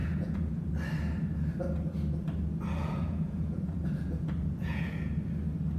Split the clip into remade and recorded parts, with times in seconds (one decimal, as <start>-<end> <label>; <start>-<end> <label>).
0.0-0.7 remade; 0.7-2.8 recorded; 2.8-5.1 remade; 5.1-5.8 recorded